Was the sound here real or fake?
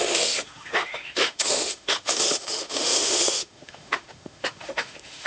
fake